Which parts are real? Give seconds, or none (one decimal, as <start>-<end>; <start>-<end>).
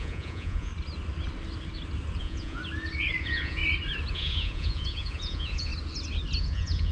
0.7-2.2; 2.6-3.2; 3.6-4.1; 5.7-6.4